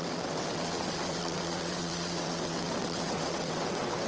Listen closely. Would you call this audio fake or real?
fake